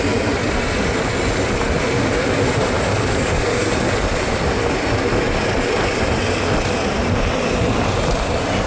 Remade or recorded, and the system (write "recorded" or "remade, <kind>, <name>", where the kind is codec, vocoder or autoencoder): recorded